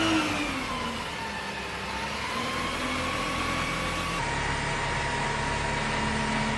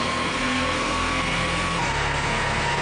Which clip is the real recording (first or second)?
first